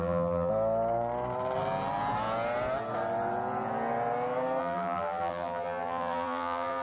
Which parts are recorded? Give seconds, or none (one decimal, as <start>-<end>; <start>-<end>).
0.5-4.6